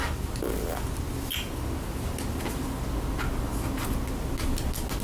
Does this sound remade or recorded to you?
recorded